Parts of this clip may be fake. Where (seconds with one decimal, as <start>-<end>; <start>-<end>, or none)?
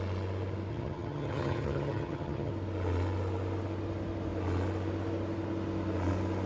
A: 0.7-2.5